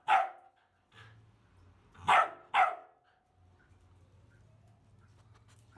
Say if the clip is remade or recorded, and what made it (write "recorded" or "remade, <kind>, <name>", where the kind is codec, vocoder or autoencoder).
recorded